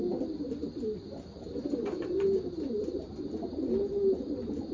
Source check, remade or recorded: recorded